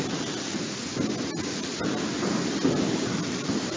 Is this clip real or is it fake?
real